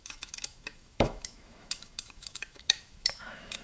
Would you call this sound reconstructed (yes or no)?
yes